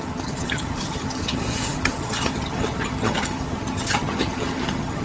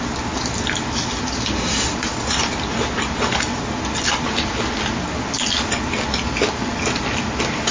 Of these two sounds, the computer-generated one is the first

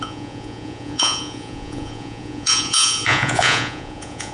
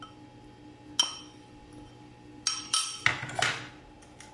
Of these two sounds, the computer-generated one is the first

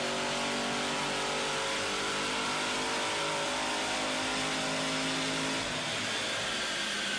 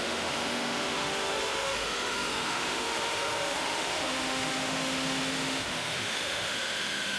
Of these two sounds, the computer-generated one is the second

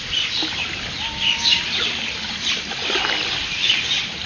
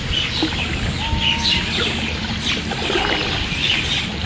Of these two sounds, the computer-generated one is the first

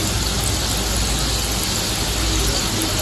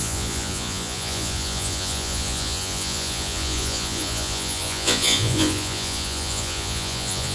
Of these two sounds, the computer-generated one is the second